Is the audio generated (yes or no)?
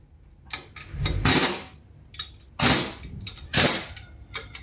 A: no